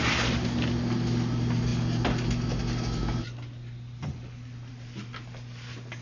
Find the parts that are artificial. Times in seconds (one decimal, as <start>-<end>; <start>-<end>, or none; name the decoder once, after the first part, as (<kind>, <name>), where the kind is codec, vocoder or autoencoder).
none

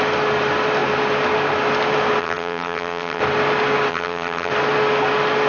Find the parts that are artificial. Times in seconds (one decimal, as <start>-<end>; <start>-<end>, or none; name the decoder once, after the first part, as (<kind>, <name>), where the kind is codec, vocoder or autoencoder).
2.2-3.2 (vocoder, HiFi-GAN); 3.9-4.5